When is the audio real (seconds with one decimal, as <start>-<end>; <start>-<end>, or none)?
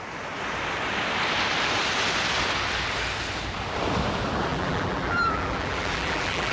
0.0-4.5